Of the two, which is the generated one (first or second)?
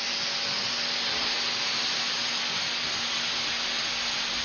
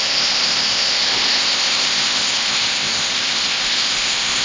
second